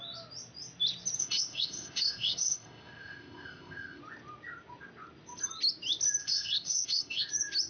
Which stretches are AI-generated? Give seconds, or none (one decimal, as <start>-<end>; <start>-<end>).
1.2-4.0; 6.2-7.3